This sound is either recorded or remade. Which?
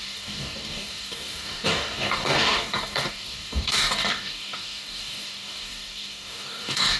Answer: remade